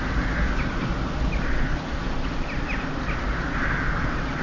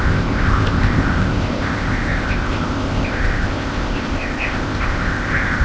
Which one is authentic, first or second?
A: first